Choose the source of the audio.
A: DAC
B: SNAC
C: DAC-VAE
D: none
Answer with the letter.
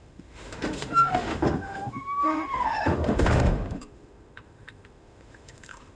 C